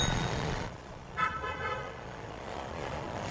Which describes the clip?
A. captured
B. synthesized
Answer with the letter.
B